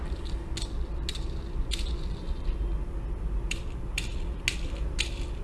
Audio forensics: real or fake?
real